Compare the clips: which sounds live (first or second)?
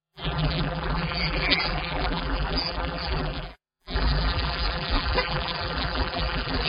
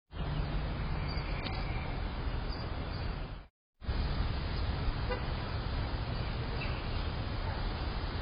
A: second